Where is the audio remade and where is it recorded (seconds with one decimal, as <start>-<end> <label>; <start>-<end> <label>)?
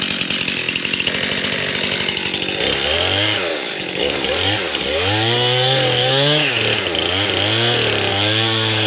0.0-3.5 recorded; 3.5-6.5 remade; 6.5-8.1 recorded; 8.1-8.9 remade